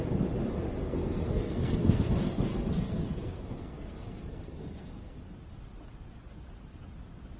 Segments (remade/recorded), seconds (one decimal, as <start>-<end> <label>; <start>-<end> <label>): 0.0-0.8 recorded; 0.8-5.2 remade; 5.2-7.4 recorded

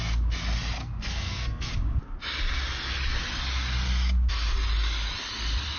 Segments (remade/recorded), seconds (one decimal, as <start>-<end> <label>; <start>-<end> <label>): 0.0-0.8 recorded; 0.8-1.7 remade; 1.7-5.8 recorded

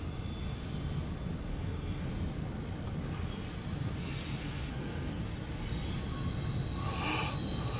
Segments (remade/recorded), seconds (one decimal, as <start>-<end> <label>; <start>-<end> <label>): 0.0-1.5 recorded; 1.5-2.1 remade; 2.1-4.4 recorded; 4.4-5.2 remade; 5.2-7.8 recorded

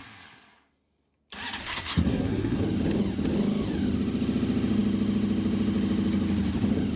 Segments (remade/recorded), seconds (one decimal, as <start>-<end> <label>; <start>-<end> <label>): 0.0-1.6 recorded; 1.6-2.6 remade; 2.6-7.0 recorded

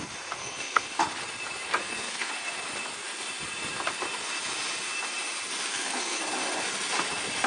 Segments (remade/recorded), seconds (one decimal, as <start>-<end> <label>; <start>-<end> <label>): 0.0-0.4 recorded; 0.4-1.0 remade; 1.0-1.8 recorded; 1.8-2.3 remade; 2.3-5.7 recorded; 5.7-6.2 remade; 6.2-7.5 recorded

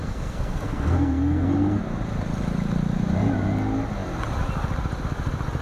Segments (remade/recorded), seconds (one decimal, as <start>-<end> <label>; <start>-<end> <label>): 0.0-1.8 remade; 1.8-5.6 recorded

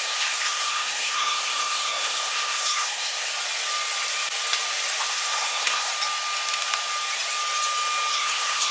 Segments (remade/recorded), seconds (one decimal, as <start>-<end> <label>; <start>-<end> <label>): 0.0-3.3 remade; 3.3-5.1 recorded; 5.1-5.9 remade; 5.9-8.1 recorded; 8.1-8.7 remade

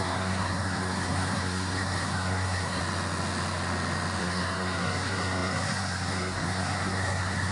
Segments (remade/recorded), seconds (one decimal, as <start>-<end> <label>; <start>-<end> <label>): 0.0-2.8 remade; 2.8-4.2 recorded; 4.2-7.5 remade